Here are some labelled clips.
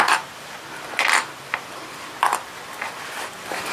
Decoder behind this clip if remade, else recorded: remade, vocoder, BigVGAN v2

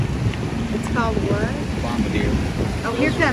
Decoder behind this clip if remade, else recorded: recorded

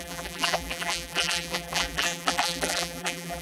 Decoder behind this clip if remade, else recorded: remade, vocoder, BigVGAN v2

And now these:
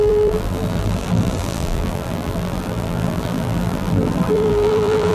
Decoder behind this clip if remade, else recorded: remade, vocoder, BigVGAN v2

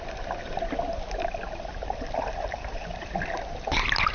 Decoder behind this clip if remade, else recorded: recorded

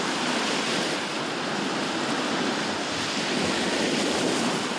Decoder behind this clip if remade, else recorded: recorded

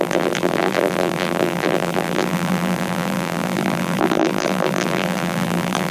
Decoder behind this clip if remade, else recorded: remade, vocoder, BigVGAN v2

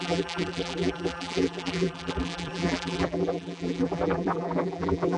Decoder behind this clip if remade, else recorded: remade, vocoder, BigVGAN v2